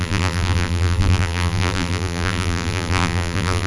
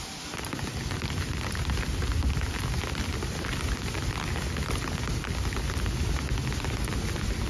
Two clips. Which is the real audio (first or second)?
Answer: second